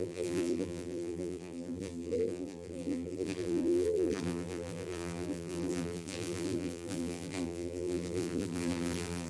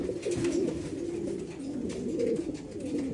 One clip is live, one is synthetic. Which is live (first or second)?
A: second